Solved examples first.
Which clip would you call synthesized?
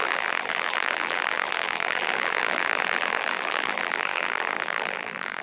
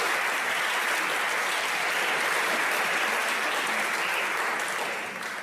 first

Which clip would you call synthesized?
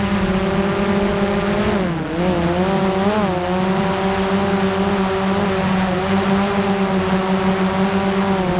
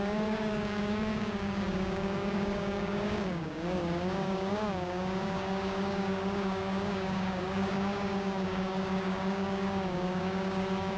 second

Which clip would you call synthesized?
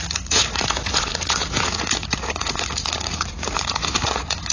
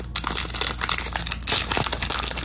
first